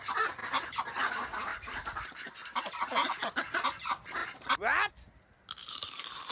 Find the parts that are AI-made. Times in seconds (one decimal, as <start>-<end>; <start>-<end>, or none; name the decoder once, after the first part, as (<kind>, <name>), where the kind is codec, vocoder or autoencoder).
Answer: 1.5-2.3 (vocoder, BigVGAN v2); 5.6-6.3